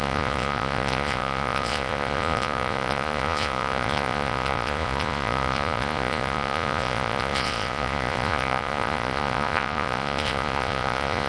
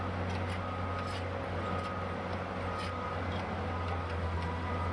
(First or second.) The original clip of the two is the second